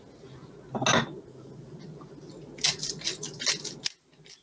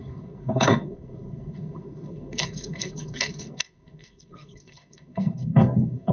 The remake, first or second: second